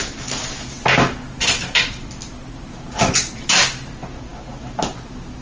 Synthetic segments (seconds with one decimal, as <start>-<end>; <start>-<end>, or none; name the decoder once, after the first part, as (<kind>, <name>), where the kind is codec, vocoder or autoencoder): none